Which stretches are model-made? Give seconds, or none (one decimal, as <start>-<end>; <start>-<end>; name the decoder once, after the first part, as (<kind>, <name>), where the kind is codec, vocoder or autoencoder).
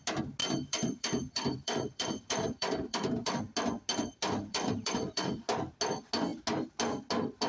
0.4-3.4 (vocoder, BigVGAN v2); 4.5-5.3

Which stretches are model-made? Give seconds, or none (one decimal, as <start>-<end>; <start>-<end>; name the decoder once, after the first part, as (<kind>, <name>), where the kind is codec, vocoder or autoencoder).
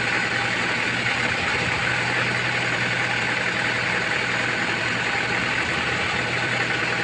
none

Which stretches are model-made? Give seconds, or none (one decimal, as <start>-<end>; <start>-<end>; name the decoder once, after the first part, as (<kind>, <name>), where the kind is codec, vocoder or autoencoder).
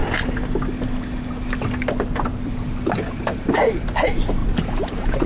3.2-5.3 (vocoder, BigVGAN v2)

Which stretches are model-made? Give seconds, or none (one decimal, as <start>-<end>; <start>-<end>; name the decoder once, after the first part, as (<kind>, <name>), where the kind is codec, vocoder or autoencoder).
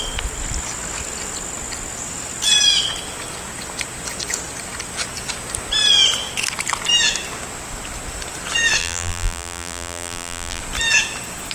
8.8-10.6 (vocoder, BigVGAN v2)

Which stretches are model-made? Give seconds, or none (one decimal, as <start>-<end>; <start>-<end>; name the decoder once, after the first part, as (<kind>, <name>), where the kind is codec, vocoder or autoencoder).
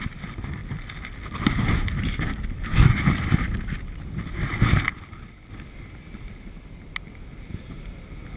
0.6-2.9 (vocoder, BigVGAN v2)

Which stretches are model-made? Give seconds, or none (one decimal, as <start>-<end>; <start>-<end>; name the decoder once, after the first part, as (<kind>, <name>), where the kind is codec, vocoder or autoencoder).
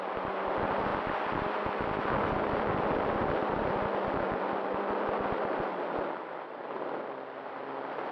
none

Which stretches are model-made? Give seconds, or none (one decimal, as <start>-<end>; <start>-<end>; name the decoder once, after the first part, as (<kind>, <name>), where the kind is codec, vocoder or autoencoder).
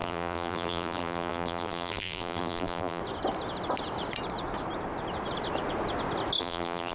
0.0-3.0 (vocoder, BigVGAN v2); 6.4-6.9